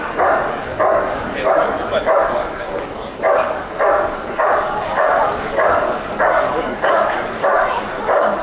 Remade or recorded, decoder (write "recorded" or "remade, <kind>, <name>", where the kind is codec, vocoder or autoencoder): remade, codec, DAC